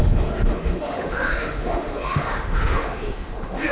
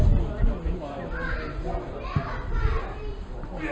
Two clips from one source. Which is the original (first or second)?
second